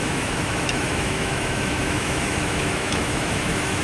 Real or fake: fake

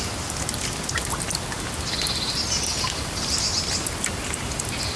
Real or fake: real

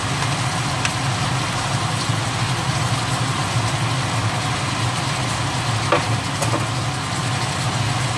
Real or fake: real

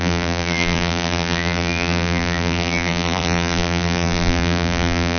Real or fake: fake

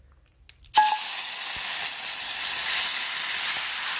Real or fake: real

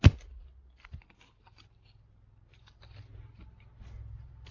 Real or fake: real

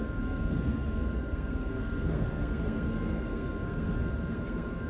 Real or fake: fake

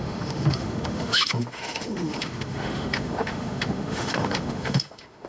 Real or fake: fake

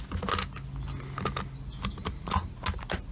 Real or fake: real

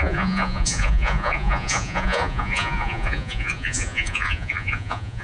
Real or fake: fake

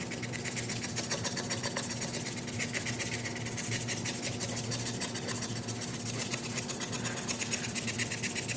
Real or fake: real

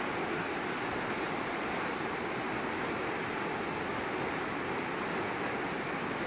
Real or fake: real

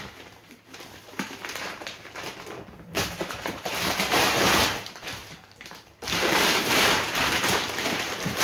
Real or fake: fake